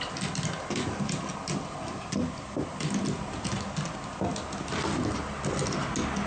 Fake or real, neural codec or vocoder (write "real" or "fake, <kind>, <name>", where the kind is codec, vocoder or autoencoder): real